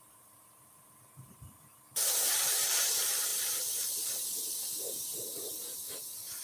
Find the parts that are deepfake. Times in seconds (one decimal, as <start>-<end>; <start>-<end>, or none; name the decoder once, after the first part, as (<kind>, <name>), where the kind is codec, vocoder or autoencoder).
0.0-6.4 (vocoder, BigVGAN v2)

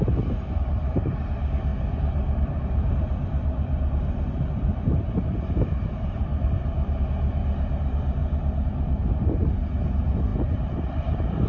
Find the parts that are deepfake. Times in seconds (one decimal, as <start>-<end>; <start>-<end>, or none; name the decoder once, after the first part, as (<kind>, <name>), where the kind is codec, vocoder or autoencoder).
1.7-7.0 (vocoder, BigVGAN v2); 10.3-11.5

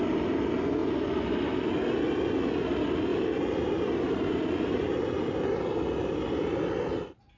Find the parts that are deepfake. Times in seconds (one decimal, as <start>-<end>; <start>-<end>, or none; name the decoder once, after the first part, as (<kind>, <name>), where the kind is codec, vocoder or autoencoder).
3.1-5.2 (vocoder, BigVGAN v2)

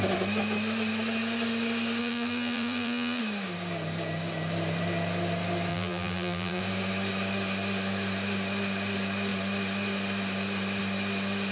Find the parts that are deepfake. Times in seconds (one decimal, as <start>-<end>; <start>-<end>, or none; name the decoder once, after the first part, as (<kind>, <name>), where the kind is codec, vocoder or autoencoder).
2.0-3.2 (vocoder, BigVGAN v2); 5.7-6.6

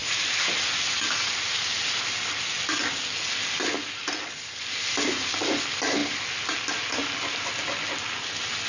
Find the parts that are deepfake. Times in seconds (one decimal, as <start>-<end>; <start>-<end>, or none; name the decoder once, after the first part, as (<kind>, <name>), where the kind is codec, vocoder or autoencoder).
0.0-0.6 (vocoder, BigVGAN v2)